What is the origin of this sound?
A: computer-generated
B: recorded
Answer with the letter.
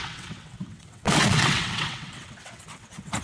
A